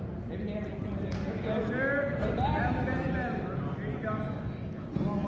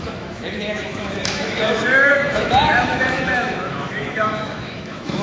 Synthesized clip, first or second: second